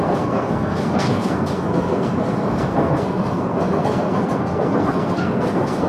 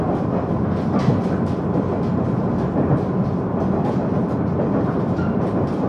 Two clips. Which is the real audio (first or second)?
second